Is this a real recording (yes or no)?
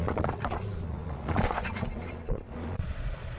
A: no